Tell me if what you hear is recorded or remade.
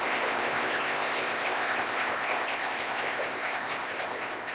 remade